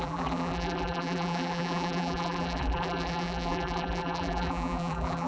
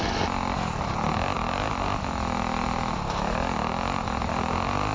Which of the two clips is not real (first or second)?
first